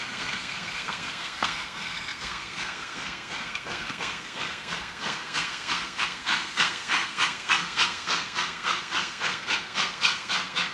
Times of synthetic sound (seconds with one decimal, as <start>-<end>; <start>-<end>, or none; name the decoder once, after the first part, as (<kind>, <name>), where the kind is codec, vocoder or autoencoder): 0.0-10.7 (codec, SNAC)